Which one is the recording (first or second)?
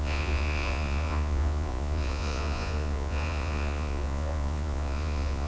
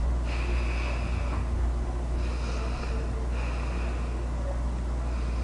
second